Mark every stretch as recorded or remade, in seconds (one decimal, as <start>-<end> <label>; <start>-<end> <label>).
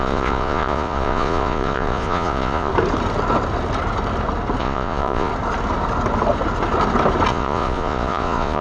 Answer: 0.0-2.7 remade; 2.7-4.6 recorded; 4.6-5.3 remade; 5.3-7.3 recorded; 7.3-8.6 remade